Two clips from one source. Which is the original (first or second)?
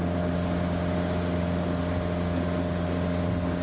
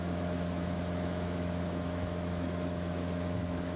first